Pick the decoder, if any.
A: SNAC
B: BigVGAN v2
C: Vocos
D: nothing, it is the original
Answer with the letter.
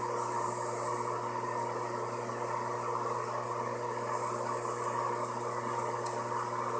D